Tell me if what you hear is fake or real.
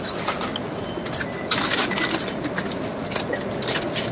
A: real